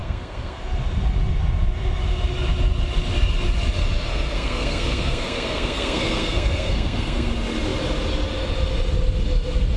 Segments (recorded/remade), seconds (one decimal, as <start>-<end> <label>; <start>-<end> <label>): 0.0-0.6 remade; 0.6-4.1 recorded; 4.1-7.3 remade; 7.3-9.8 recorded

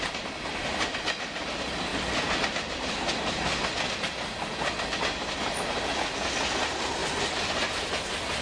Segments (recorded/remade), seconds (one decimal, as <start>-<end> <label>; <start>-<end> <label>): 0.0-8.4 recorded

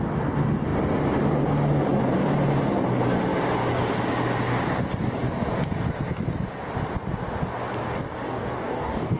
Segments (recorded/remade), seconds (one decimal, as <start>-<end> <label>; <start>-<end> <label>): 0.0-7.8 recorded; 7.8-9.2 remade

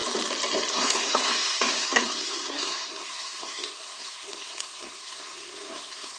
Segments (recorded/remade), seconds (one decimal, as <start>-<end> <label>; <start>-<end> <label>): 0.0-0.7 recorded; 0.7-6.2 remade

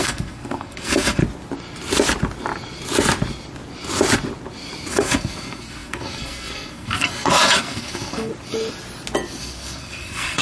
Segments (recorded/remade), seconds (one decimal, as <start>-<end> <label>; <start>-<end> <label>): 0.0-1.2 remade; 1.2-4.9 recorded; 4.9-8.3 remade; 8.3-9.4 recorded; 9.4-10.4 remade

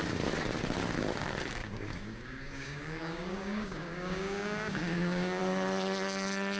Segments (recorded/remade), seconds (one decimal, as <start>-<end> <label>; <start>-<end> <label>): 0.0-1.6 recorded; 1.6-5.4 remade; 5.4-6.6 recorded